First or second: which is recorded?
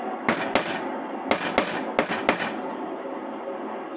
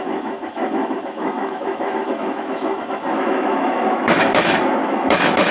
first